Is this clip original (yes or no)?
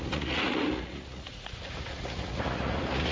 no